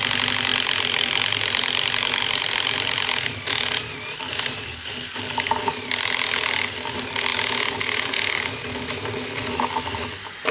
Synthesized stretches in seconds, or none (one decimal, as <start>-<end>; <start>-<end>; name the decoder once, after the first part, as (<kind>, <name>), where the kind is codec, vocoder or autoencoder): none